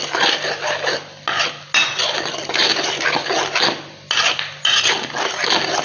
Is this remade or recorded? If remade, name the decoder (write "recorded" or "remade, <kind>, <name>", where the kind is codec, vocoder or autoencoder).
recorded